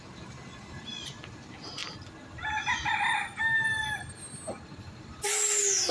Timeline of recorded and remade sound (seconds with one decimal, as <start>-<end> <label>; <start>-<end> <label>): 0.0-5.9 recorded

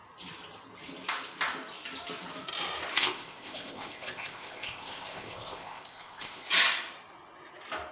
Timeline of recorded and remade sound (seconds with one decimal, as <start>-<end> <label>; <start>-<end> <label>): 0.0-2.9 recorded; 2.9-6.5 remade; 6.5-7.9 recorded

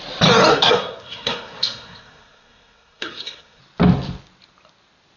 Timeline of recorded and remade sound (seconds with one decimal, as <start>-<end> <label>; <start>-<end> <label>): 0.0-0.5 recorded; 0.5-3.6 remade; 3.6-5.2 recorded

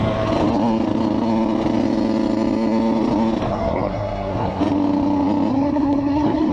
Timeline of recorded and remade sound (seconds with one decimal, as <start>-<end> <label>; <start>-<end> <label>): 0.0-3.5 recorded; 3.5-4.6 remade; 4.6-5.5 recorded; 5.5-6.5 remade

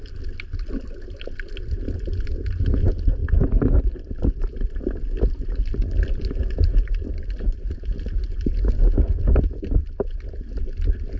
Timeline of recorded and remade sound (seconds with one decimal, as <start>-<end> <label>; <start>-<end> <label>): 0.0-3.2 recorded; 3.2-7.0 remade; 7.0-11.2 recorded

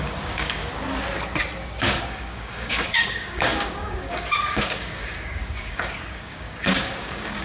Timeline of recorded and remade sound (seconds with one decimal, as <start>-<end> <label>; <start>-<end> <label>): 0.0-0.6 remade; 0.6-1.8 recorded; 1.8-7.4 remade